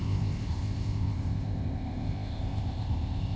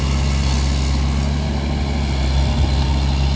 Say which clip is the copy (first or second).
first